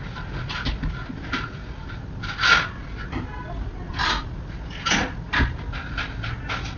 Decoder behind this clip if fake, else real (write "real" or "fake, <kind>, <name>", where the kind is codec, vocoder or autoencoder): real